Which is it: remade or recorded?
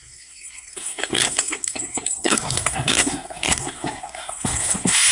remade